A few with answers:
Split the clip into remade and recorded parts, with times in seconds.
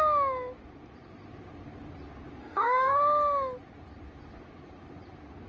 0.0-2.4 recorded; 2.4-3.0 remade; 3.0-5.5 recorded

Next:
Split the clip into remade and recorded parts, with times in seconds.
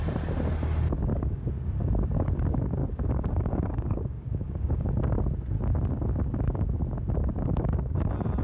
0.0-1.1 recorded; 1.1-1.7 remade; 1.7-2.8 recorded; 2.8-4.9 remade; 4.9-8.4 recorded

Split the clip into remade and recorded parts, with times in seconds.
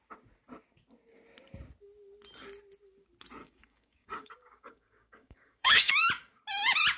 0.0-3.4 recorded; 3.4-5.9 remade; 5.9-7.0 recorded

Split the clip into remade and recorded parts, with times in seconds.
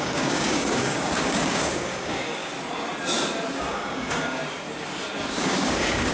0.0-2.5 remade; 2.5-3.5 recorded; 3.5-4.4 remade; 4.4-5.3 recorded; 5.3-6.1 remade